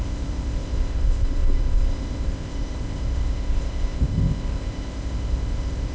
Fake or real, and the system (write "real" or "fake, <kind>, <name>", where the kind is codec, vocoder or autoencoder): fake, codec, ZipCodec